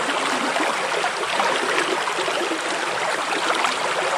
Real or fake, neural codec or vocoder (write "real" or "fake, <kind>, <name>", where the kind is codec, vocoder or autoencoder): real